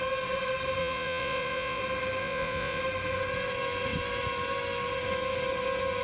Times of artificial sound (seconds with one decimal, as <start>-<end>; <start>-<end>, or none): 0.8-1.8; 2.2-2.8